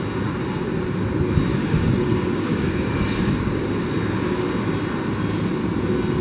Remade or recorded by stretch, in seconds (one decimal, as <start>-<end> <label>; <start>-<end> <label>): 0.0-1.5 recorded; 1.5-3.8 remade; 3.8-6.2 recorded